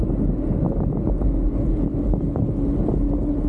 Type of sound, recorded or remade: recorded